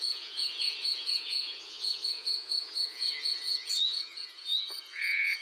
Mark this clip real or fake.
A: fake